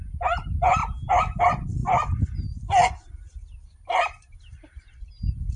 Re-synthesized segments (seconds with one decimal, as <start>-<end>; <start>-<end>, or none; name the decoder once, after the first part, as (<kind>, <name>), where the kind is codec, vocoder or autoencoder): none